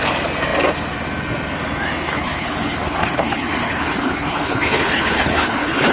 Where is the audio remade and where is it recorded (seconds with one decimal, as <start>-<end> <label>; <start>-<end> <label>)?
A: 0.0-2.1 recorded; 2.1-5.9 remade